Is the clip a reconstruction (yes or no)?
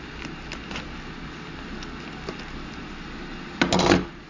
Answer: no